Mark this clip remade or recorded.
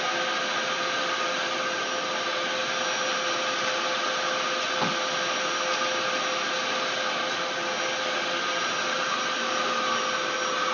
recorded